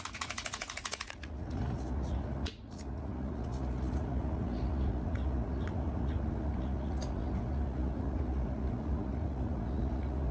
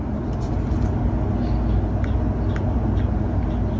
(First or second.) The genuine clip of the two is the second